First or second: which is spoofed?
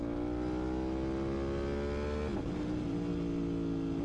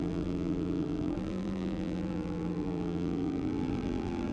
second